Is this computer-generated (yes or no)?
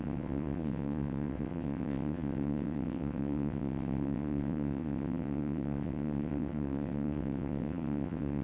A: yes